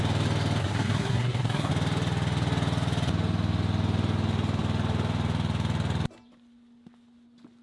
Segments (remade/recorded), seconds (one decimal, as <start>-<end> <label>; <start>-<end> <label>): 0.0-0.6 recorded; 0.6-1.7 remade; 1.7-7.6 recorded

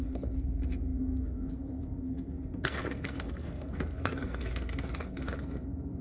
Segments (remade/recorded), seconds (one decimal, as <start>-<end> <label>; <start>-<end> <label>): 0.0-6.0 remade

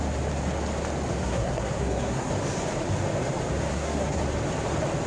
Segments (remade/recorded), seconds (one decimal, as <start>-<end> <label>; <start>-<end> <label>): 0.0-1.2 recorded; 1.2-2.3 remade; 2.3-3.7 recorded; 3.7-4.2 remade; 4.2-5.1 recorded